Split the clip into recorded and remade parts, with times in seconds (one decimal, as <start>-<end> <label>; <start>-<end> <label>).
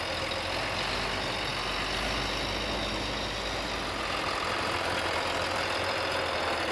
0.0-6.7 recorded